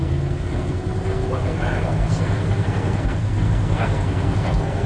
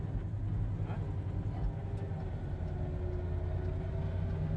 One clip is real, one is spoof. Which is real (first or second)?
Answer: second